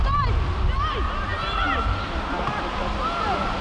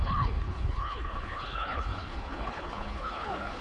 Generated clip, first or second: second